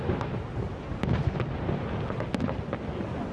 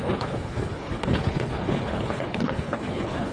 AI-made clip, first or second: second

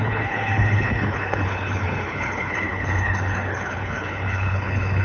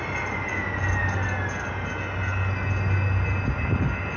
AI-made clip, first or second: first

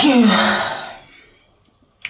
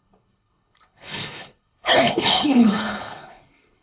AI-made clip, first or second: second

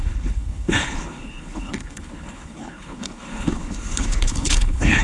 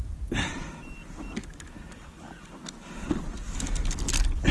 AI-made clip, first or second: first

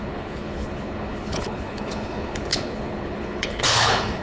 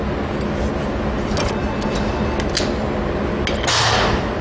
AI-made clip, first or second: first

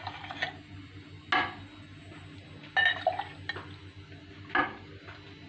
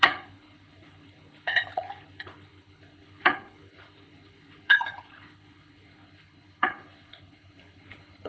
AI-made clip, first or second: second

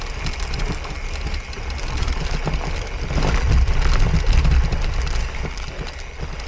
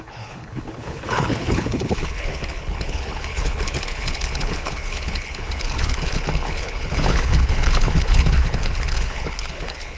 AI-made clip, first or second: second